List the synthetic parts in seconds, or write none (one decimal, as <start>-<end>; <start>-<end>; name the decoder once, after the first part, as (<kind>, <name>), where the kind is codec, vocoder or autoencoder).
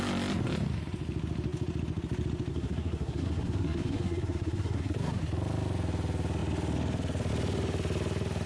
2.5-5.2 (codec, SNAC)